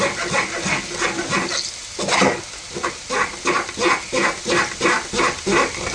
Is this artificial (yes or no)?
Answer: no